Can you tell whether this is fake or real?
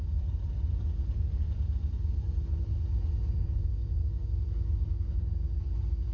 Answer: real